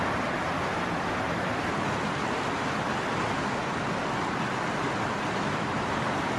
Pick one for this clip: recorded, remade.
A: recorded